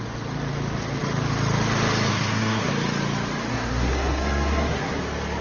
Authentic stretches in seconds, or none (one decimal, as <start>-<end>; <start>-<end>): 0.0-2.1; 2.7-3.5; 5.0-5.4